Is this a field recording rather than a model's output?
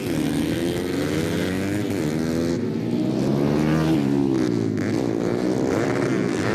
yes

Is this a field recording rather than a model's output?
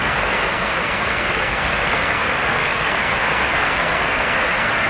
no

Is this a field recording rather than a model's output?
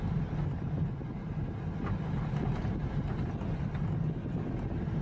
yes